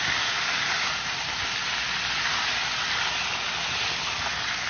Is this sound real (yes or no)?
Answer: yes